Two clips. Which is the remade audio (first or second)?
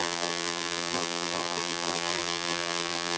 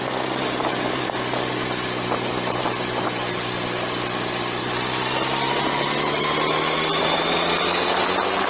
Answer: first